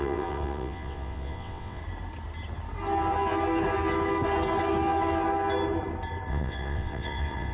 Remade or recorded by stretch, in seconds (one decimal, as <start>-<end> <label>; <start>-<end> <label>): 0.0-1.8 remade; 1.8-6.3 recorded; 6.3-7.5 remade